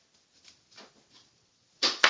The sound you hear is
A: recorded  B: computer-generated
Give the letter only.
A